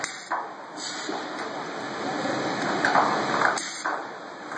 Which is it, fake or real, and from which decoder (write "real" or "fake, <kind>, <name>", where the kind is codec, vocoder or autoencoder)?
real